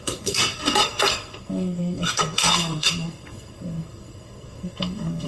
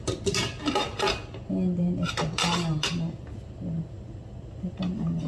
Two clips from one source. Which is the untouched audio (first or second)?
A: second